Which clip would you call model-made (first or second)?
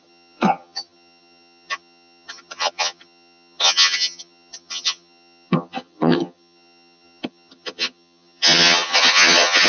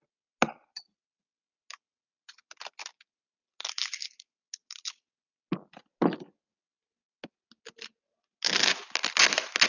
first